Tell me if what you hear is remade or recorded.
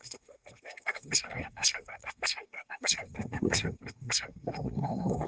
remade